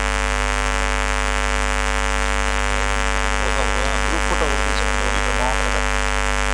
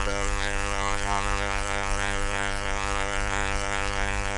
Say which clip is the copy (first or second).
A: second